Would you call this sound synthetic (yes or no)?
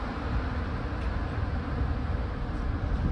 no